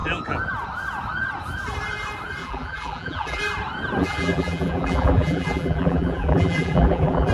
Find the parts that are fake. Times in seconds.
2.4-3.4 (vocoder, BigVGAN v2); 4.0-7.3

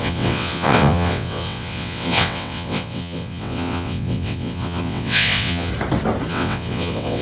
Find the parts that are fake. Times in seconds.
0.0-5.7 (vocoder, WaveNeXt); 6.3-7.2